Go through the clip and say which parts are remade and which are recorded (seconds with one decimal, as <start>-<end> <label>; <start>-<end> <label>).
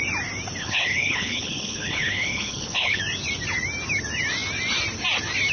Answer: 0.0-0.6 recorded; 0.6-3.0 remade; 3.0-5.5 recorded